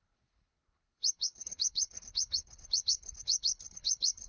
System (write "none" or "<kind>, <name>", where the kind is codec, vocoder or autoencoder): codec, HILCodec